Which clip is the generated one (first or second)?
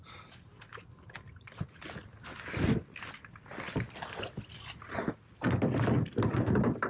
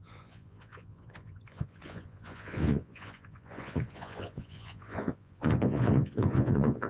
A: second